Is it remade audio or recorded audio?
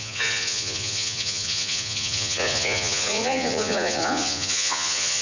remade